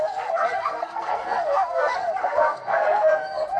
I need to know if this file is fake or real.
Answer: fake